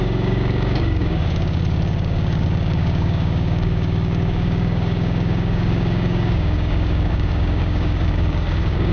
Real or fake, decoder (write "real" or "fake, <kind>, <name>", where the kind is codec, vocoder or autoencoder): fake, codec, DAC